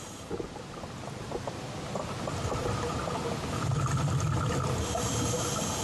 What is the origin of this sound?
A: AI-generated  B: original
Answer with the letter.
B